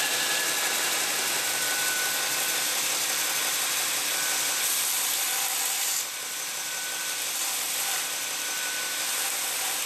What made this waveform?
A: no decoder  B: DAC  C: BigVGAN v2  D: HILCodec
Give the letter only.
C